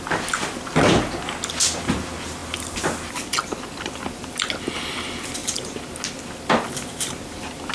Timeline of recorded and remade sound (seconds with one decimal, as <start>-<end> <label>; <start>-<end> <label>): 0.0-7.7 recorded

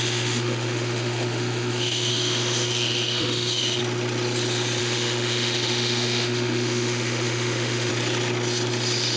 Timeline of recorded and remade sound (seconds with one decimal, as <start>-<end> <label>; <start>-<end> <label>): 0.0-3.8 remade; 3.8-4.8 recorded; 4.8-7.9 remade; 7.9-9.2 recorded